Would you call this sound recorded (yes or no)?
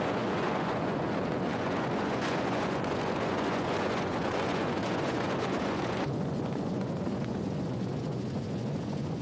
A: no